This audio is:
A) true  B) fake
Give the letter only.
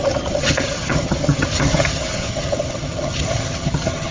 B